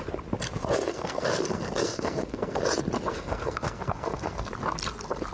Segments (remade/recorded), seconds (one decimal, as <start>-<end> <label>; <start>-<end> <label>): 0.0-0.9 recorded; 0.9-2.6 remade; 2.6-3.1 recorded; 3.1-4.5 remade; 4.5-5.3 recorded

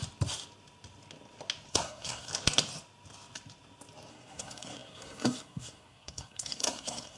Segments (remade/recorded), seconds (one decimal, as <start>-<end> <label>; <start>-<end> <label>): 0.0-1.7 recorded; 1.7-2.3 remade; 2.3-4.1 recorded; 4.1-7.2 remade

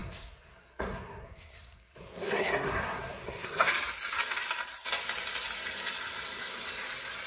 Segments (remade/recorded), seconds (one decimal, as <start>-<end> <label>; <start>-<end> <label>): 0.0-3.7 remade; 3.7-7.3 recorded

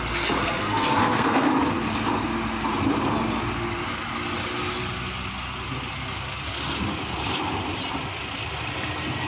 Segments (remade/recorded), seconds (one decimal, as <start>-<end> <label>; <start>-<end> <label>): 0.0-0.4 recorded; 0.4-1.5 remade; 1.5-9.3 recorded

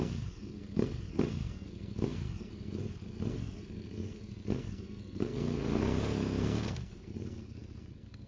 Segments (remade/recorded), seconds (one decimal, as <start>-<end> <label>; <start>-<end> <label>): 0.0-8.3 remade

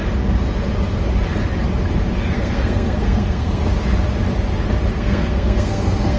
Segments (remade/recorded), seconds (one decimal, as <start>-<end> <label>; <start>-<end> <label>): 0.0-2.3 recorded; 2.3-3.6 remade; 3.6-4.9 recorded; 4.9-6.2 remade

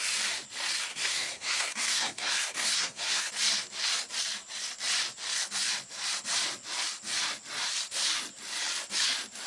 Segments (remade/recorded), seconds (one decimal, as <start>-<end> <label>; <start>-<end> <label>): 0.0-0.9 recorded; 0.9-3.3 remade; 3.3-9.5 recorded